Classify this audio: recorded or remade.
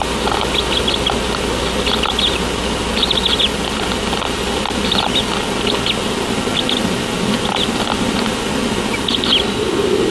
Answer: recorded